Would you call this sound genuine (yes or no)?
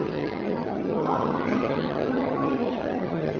no